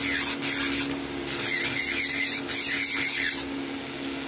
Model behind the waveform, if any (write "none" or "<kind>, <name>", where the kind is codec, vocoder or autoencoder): none